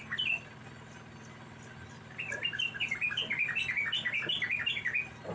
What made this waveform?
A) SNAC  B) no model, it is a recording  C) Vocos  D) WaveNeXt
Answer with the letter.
B